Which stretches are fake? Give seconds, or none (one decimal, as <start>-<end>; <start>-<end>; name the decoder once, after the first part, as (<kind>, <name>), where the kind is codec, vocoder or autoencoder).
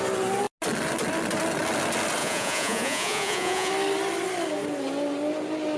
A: 2.2-3.7 (vocoder, Vocos)